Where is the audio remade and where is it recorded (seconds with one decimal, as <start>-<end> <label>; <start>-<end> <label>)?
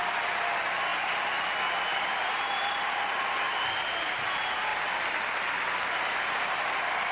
0.0-0.9 recorded; 0.9-1.4 remade; 1.4-1.9 recorded; 1.9-3.0 remade; 3.0-7.1 recorded